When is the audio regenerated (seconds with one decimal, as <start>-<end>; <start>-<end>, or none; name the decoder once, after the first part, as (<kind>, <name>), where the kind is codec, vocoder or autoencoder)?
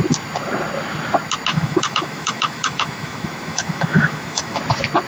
1.5-4.6 (autoencoder, DAC-VAE)